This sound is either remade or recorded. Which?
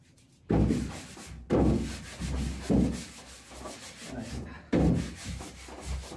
recorded